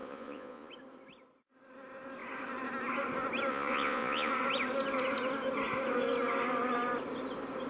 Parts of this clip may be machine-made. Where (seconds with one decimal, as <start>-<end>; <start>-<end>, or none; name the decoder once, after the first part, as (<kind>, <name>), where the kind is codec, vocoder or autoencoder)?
0.0-0.7 (vocoder, Vocos); 3.5-4.3